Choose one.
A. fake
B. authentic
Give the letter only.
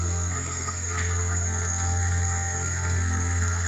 A